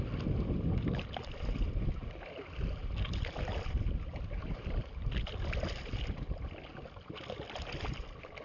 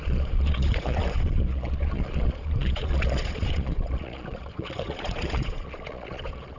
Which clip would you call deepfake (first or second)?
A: second